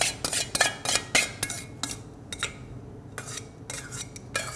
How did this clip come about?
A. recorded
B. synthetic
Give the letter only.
A